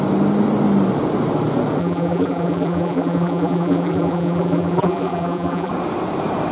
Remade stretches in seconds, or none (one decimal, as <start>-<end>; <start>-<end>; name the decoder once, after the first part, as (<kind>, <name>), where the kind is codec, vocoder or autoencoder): 1.8-5.7 (vocoder, BigVGAN v2)

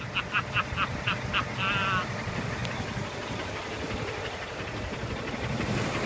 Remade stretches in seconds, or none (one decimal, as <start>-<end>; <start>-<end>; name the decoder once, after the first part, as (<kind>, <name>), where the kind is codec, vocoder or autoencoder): none

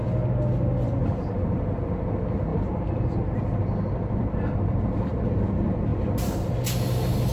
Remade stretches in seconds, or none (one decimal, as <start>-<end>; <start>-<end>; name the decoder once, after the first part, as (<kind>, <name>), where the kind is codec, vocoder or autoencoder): 1.0-1.6 (vocoder, BigVGAN v2); 2.5-5.3